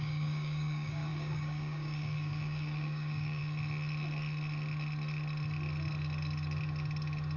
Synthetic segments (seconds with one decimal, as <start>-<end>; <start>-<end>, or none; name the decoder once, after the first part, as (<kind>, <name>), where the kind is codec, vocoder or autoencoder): 0.0-3.4 (codec, DAC)